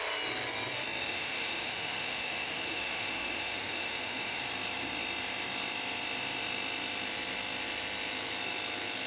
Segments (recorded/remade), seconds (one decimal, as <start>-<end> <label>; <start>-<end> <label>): 0.0-1.0 recorded; 1.0-4.4 remade; 4.4-9.1 recorded

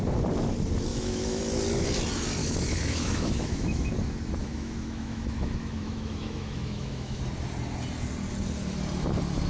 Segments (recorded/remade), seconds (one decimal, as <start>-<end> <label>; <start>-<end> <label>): 0.0-0.9 recorded; 0.9-1.4 remade; 1.4-2.4 recorded; 2.4-3.9 remade; 3.9-4.4 recorded; 4.4-7.2 remade; 7.2-9.5 recorded

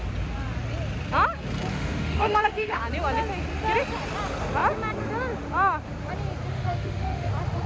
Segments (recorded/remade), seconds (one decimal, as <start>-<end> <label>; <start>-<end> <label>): 0.0-1.7 recorded; 1.7-2.8 remade; 2.8-6.5 recorded; 6.5-7.3 remade; 7.3-7.7 recorded

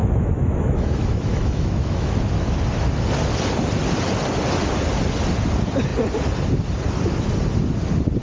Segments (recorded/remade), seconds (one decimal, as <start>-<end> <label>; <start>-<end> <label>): 0.0-2.2 remade; 2.2-8.2 recorded

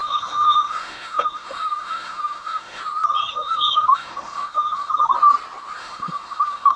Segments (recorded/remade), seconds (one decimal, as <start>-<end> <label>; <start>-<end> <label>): 0.0-2.8 remade; 2.8-3.3 recorded; 3.3-4.9 remade; 4.9-5.8 recorded; 5.8-6.8 remade

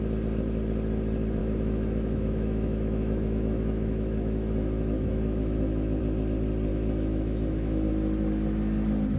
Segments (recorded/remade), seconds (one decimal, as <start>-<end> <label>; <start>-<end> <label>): 0.0-1.4 recorded; 1.4-6.0 remade; 6.0-6.7 recorded; 6.7-7.9 remade; 7.9-9.2 recorded

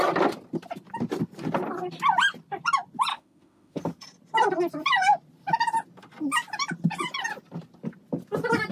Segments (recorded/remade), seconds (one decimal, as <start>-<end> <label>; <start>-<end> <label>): 0.0-3.1 recorded; 3.1-3.8 remade; 3.8-8.7 recorded

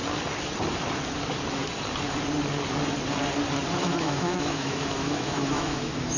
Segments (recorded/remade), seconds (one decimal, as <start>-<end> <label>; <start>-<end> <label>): 0.0-3.8 recorded; 3.8-6.2 remade